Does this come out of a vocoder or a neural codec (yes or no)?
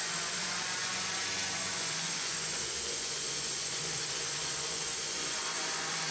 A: yes